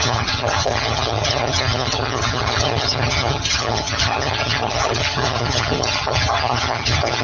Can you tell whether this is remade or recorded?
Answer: remade